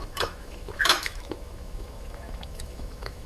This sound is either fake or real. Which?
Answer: fake